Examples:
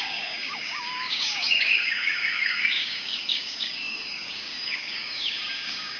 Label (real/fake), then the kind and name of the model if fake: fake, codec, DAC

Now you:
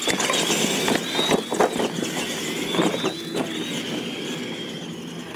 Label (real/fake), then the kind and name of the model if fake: real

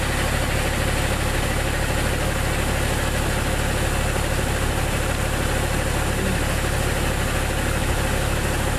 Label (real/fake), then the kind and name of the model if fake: real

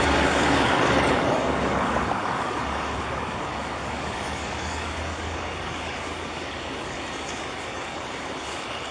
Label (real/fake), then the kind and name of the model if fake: fake, codec, DAC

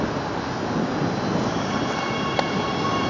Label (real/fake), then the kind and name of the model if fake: real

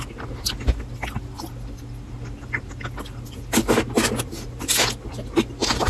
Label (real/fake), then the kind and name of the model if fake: real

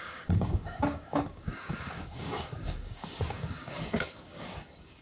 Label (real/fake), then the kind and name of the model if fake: fake, codec, DAC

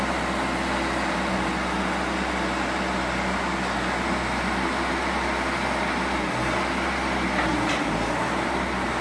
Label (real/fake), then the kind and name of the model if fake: real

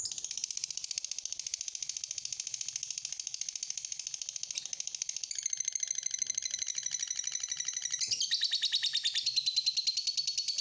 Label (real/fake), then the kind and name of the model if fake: real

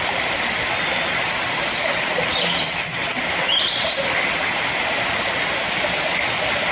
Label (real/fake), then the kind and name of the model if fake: real